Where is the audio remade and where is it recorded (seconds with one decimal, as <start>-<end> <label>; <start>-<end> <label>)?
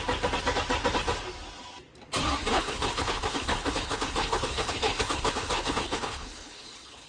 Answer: 0.0-2.5 recorded; 2.5-7.1 remade